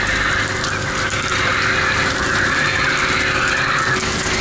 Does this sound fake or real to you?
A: real